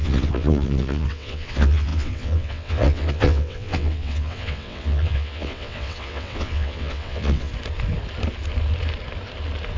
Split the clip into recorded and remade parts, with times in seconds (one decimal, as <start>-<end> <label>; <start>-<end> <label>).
0.0-7.5 remade; 7.5-9.8 recorded